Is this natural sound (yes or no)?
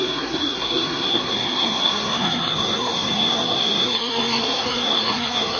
no